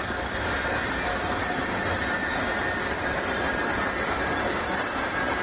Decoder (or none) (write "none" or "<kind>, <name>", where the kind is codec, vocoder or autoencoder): none